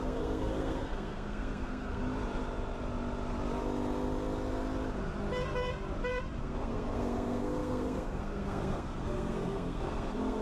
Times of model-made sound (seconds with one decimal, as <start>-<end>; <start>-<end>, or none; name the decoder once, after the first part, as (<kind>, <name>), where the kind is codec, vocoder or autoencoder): 0.0-2.0 (codec, SNAC); 6.4-10.4